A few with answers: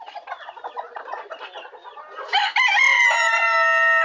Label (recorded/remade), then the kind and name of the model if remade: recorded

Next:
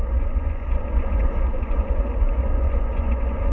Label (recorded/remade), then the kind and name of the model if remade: remade, vocoder, Vocos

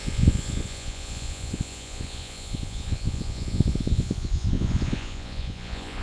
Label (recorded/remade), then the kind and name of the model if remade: remade, vocoder, Vocos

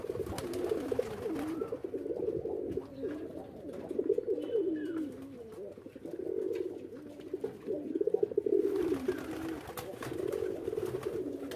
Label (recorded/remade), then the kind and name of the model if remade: recorded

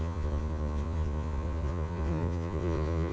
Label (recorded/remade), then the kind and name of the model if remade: remade, vocoder, Vocos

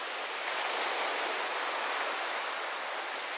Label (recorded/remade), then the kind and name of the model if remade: recorded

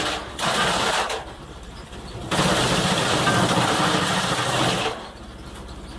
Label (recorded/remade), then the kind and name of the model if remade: recorded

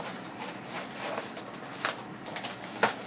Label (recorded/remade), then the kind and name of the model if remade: recorded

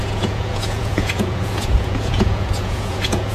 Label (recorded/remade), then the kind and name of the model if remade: remade, vocoder, Vocos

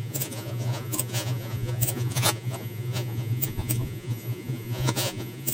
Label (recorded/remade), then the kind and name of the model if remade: remade, vocoder, Vocos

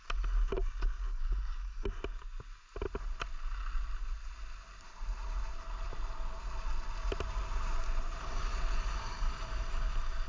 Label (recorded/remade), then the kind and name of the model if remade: recorded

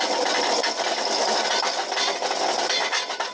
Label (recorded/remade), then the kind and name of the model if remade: recorded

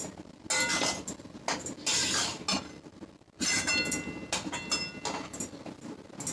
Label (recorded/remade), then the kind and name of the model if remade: recorded